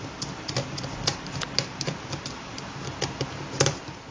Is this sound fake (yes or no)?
no